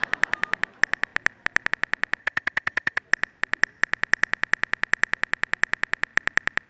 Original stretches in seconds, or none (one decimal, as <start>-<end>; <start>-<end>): 0.0-2.2; 3.0-6.7